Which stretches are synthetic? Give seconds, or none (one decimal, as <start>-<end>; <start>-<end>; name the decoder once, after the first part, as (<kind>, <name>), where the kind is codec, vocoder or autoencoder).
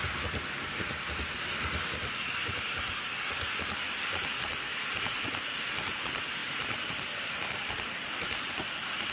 6.4-8.5 (vocoder, BigVGAN v2)